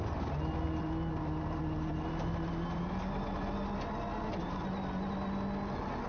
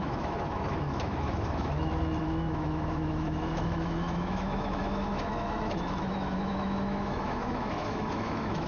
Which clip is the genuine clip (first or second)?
first